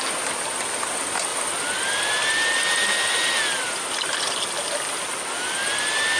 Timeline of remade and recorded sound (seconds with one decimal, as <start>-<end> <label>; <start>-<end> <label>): 0.0-6.2 recorded